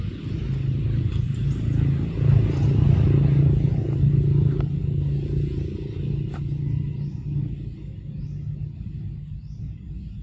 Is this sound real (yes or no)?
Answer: yes